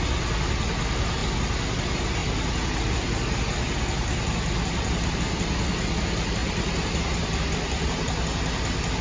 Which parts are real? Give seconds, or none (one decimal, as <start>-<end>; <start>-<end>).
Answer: 0.0-9.0